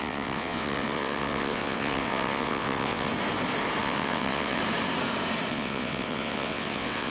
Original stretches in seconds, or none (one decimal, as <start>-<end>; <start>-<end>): 3.1-3.8; 4.6-5.5